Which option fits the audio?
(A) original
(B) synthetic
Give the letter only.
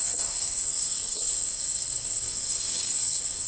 B